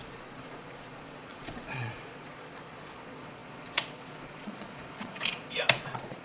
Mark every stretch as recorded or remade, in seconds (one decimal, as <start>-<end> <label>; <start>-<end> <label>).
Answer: 0.0-6.2 remade